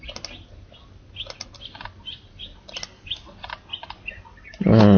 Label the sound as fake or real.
real